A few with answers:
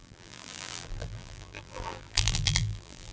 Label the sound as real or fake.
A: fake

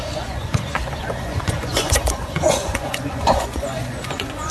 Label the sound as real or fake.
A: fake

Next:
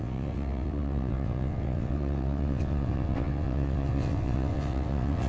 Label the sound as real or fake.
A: fake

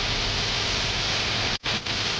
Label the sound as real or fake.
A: real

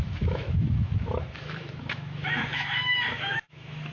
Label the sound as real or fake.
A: fake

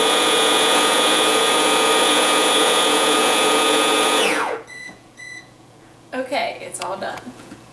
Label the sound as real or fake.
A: fake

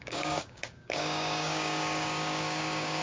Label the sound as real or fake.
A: fake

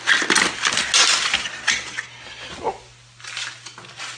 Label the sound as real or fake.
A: real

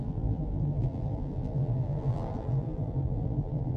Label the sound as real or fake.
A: fake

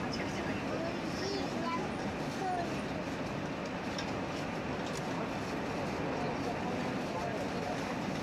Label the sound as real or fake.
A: real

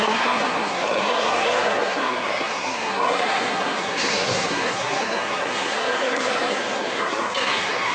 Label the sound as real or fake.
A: fake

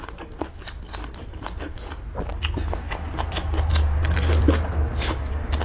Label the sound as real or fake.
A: real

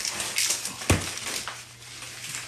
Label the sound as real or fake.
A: real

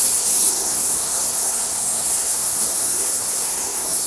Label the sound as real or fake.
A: fake